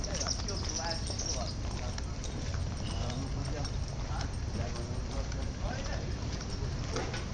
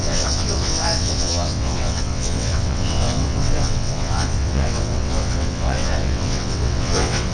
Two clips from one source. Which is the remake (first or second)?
second